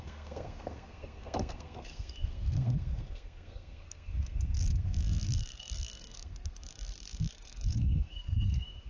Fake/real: fake